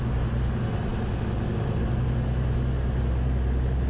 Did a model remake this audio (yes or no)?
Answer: no